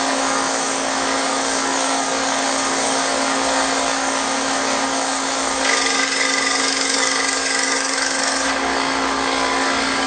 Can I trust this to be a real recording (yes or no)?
no